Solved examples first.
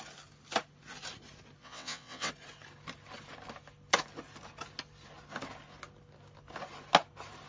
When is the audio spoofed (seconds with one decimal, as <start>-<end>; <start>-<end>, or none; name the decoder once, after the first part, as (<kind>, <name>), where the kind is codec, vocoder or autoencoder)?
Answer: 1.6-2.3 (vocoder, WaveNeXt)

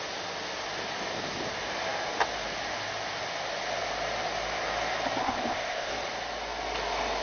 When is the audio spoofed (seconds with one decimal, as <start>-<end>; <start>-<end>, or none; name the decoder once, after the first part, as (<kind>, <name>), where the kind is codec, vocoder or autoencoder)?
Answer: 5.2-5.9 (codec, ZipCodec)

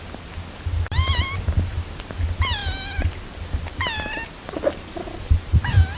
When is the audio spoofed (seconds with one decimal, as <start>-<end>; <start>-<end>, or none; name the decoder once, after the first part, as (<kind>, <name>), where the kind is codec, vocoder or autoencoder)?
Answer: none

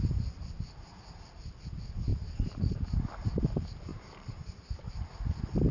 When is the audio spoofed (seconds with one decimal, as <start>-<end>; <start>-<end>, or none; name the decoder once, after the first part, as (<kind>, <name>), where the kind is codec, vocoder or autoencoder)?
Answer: 2.1-3.1 (vocoder, BigVGAN v2); 3.9-5.1